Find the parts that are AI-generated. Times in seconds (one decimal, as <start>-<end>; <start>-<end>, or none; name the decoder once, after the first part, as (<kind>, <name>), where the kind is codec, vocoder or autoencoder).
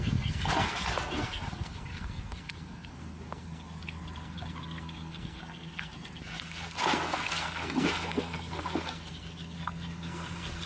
0.0-10.7 (codec, SNAC)